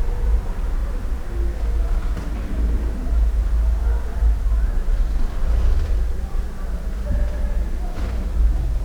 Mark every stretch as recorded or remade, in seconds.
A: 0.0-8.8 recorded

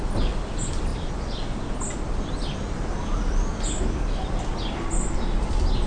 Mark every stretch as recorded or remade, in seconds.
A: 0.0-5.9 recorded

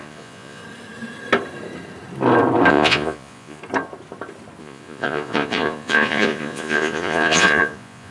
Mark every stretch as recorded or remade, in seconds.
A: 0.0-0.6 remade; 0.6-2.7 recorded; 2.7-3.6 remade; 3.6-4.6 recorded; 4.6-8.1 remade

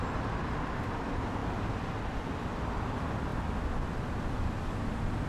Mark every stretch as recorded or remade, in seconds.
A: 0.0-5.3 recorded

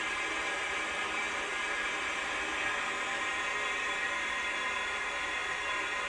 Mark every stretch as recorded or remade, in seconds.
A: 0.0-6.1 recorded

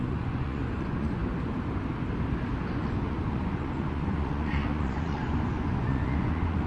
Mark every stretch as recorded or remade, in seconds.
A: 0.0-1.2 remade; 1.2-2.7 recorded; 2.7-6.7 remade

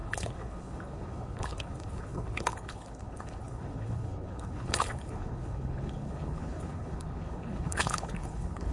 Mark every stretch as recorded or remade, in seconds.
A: 0.0-8.7 remade